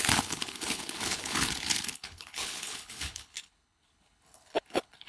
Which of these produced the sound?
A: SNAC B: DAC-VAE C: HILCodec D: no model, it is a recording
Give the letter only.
C